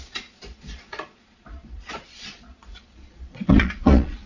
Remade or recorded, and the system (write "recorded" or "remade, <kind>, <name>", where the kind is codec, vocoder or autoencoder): remade, vocoder, Vocos